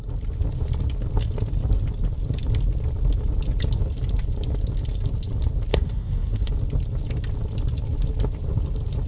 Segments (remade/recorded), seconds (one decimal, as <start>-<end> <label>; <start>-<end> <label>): 0.0-5.7 recorded; 5.7-6.5 remade; 6.5-9.1 recorded